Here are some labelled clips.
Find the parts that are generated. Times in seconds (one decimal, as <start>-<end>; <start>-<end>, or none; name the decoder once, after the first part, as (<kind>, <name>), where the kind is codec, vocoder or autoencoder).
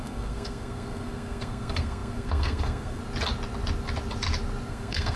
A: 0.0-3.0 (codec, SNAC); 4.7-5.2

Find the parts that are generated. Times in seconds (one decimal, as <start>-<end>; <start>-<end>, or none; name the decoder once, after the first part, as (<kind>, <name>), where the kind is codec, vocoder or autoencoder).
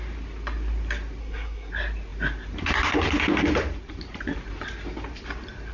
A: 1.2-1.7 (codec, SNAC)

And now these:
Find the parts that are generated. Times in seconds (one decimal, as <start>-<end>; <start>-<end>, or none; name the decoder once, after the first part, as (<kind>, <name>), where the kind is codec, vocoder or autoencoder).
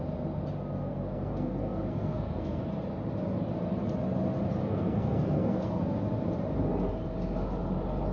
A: 0.8-2.6 (codec, SNAC); 4.6-5.9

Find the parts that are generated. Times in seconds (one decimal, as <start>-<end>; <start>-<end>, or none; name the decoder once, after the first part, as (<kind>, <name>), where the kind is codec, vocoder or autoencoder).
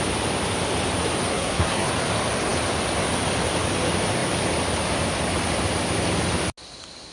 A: 1.3-1.9 (codec, SNAC)